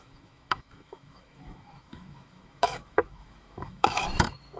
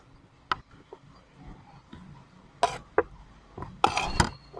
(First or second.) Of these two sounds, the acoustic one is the second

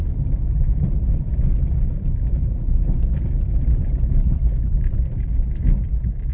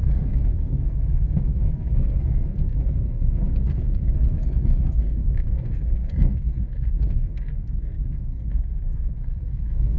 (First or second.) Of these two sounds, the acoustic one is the first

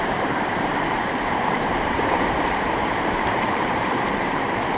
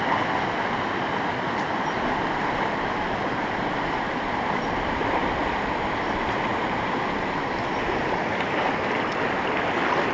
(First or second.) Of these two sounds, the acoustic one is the second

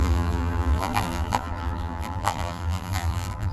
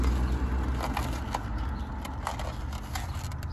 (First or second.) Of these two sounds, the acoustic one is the second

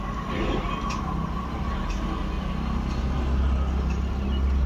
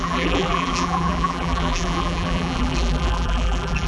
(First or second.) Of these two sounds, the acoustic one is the first